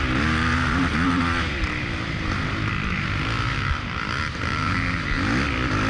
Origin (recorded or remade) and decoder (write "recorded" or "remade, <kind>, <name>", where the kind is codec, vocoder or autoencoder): recorded